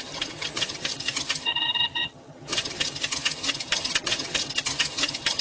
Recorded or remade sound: remade